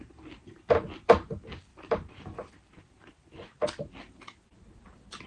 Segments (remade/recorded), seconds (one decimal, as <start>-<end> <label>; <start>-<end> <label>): 0.0-1.7 recorded; 1.7-2.8 remade; 2.8-5.3 recorded